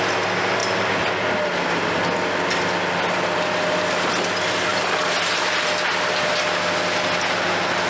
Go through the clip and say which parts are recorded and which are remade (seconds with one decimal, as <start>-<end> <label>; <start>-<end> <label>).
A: 0.0-7.9 recorded